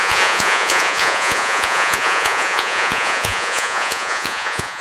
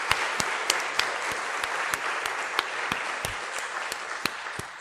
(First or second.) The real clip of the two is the second